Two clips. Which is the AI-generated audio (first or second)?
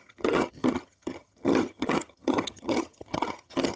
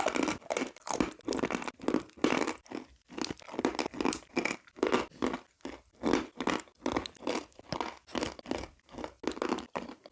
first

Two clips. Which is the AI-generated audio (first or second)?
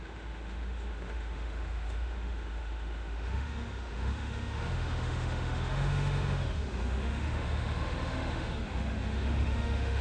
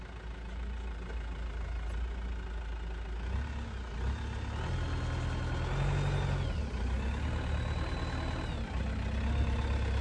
first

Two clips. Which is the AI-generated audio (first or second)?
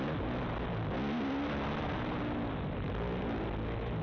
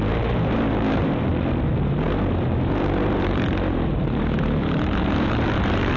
second